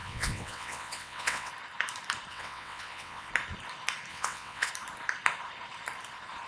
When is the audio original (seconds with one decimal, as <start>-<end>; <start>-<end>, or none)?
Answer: 1.5-2.3; 3.3-4.1; 4.7-6.5